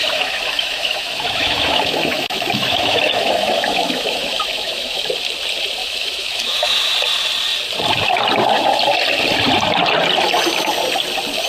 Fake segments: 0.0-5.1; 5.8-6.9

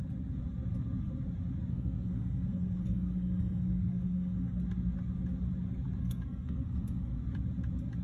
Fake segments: 1.7-4.6; 6.0-7.2

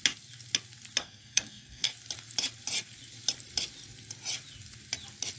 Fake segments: 1.0-1.9

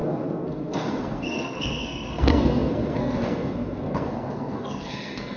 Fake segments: 0.0-5.4

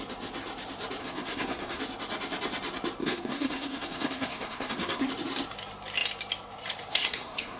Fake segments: 1.0-1.8; 3.0-5.1; 6.9-7.6

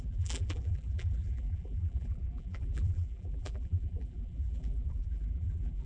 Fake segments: 0.0-5.9

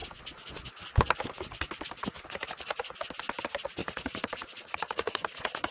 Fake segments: 3.8-5.7